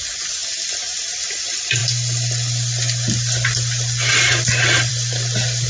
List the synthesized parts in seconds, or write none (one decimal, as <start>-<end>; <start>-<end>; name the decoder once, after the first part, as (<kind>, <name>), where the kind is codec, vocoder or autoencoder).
none